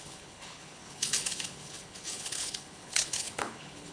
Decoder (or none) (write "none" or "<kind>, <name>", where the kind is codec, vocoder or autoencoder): codec, HILCodec